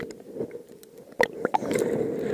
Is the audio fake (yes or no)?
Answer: no